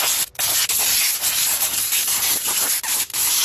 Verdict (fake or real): real